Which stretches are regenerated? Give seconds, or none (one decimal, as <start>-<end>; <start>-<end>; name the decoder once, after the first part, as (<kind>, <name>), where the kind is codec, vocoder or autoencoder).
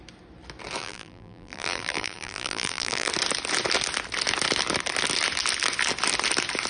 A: 0.8-3.1 (vocoder, BigVGAN v2)